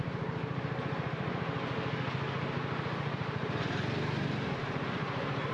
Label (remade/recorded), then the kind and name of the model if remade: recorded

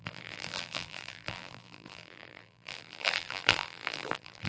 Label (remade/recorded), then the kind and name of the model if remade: remade, vocoder, BigVGAN v2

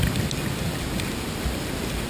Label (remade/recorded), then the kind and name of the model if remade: recorded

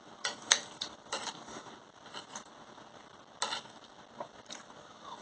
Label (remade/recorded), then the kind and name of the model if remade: recorded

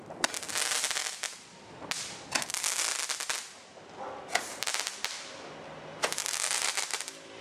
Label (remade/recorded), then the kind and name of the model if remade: recorded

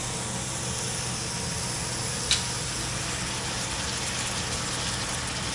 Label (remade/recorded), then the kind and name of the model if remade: recorded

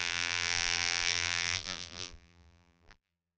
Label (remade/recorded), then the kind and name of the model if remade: remade, vocoder, BigVGAN v2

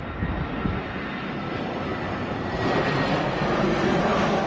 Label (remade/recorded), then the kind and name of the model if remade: recorded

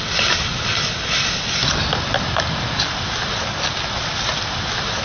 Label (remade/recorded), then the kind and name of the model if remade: recorded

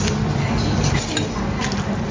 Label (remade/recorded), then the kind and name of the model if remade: recorded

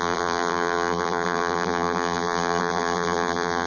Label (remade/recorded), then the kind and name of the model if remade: remade, vocoder, BigVGAN v2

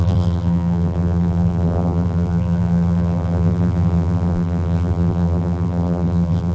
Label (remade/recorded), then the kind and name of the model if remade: remade, vocoder, BigVGAN v2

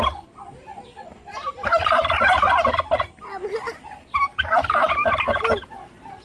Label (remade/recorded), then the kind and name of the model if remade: recorded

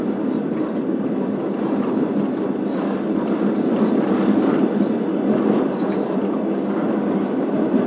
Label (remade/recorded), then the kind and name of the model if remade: recorded